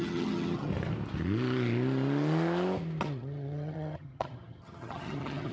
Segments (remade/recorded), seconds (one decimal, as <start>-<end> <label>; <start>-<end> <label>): 0.0-0.7 remade; 0.7-3.0 recorded; 3.0-5.5 remade